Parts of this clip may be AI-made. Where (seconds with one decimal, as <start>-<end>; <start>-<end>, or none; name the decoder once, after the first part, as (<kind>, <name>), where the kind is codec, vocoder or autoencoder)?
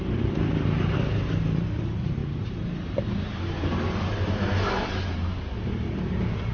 0.0-2.2 (vocoder, BigVGAN v2); 2.8-6.5